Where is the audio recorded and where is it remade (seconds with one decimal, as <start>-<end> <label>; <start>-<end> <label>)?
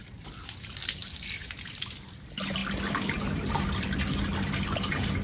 0.0-5.2 recorded